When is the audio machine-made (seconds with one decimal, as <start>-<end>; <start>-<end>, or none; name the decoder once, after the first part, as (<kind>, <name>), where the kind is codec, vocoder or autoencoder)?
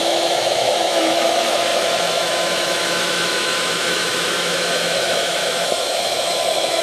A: 0.0-6.8 (autoencoder, DAC-VAE)